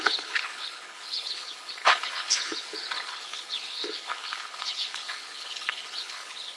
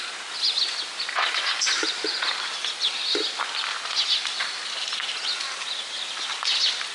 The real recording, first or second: second